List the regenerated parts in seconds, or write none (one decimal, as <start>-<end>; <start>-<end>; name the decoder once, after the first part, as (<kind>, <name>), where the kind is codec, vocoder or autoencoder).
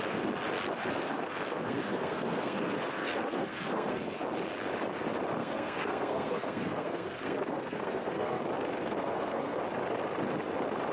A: 0.8-4.0 (codec, SNAC); 5.4-8.4; 8.8-9.6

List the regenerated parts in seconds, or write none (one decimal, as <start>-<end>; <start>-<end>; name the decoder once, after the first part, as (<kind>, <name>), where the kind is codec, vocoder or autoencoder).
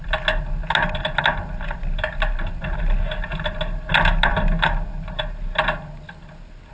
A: none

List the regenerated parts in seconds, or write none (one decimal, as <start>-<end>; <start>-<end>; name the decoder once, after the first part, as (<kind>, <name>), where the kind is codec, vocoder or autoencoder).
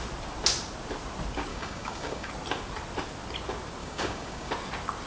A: 1.5-2.3 (codec, DAC); 3.8-4.5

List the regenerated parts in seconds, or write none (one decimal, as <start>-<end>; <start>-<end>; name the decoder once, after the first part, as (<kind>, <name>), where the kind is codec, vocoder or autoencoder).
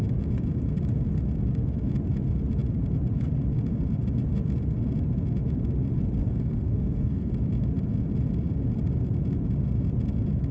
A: 6.2-7.3 (codec, SNAC)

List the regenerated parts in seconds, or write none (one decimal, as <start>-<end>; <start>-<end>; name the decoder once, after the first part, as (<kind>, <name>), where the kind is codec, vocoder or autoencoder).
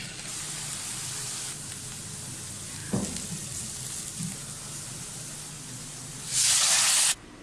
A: none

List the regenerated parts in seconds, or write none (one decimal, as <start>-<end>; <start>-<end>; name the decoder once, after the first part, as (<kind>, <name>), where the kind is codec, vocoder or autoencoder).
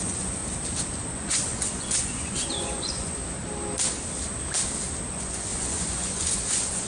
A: 0.0-0.4 (vocoder, Vocos); 1.1-3.2; 5.1-6.9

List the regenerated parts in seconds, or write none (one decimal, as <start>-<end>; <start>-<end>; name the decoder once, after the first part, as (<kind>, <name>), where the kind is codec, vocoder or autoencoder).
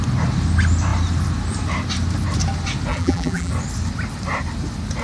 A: 2.9-3.5 (vocoder, BigVGAN v2)